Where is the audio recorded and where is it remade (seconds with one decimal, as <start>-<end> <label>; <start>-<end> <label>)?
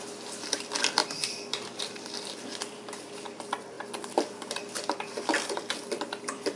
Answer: 0.0-6.6 remade